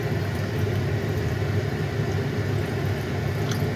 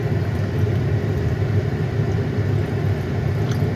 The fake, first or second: second